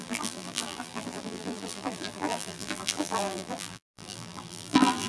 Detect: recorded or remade remade